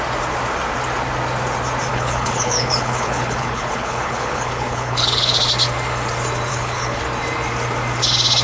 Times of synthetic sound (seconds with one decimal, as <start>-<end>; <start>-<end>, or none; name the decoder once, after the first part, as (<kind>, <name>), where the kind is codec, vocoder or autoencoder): 1.9-5.4 (codec, HILCodec); 6.5-7.0